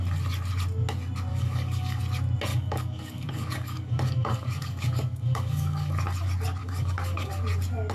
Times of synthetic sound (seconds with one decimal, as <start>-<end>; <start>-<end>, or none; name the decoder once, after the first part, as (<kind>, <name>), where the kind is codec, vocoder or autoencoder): 1.3-2.0 (codec, DAC); 2.5-5.9; 6.6-7.3